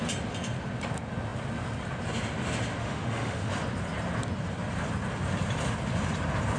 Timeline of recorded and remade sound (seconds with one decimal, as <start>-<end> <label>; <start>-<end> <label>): 0.0-2.8 recorded; 2.8-3.5 remade; 3.5-6.6 recorded